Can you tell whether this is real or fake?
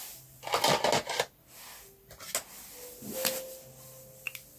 real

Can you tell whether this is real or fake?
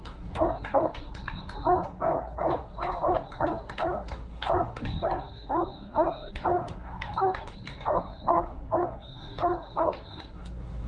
fake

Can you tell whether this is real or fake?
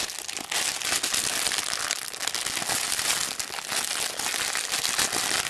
real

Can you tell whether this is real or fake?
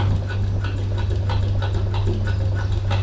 real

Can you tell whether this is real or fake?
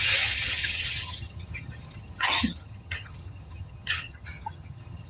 fake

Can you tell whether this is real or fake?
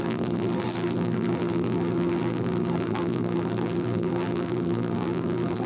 fake